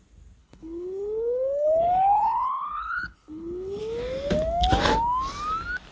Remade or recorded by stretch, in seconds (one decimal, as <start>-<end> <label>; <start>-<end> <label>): 0.0-0.4 recorded; 0.4-3.8 remade; 3.8-5.9 recorded